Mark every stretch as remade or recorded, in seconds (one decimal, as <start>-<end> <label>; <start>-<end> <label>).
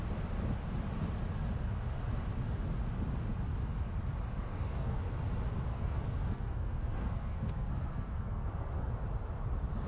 0.0-4.4 recorded; 4.4-5.0 remade; 5.0-5.7 recorded; 5.7-8.9 remade; 8.9-9.9 recorded